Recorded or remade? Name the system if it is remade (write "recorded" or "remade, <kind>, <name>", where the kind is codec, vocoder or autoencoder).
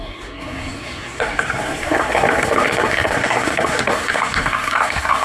remade, codec, SNAC